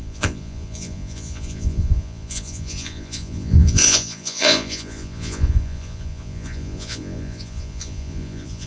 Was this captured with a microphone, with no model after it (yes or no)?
no